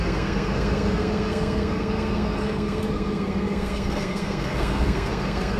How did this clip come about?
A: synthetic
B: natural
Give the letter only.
A